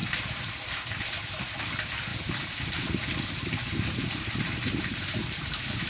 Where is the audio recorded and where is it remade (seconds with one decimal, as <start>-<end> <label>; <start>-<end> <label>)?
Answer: 0.0-1.3 remade; 1.3-2.1 recorded; 2.1-3.1 remade; 3.1-3.6 recorded; 3.6-5.9 remade